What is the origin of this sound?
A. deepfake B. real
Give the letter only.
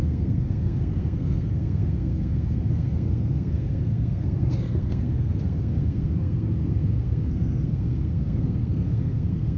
A